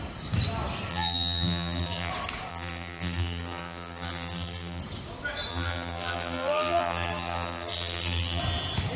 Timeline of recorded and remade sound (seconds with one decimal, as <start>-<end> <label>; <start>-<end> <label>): 0.0-0.9 recorded; 0.9-2.1 remade; 2.1-2.5 recorded; 2.5-4.8 remade; 4.8-5.5 recorded; 5.5-8.4 remade; 8.4-9.0 recorded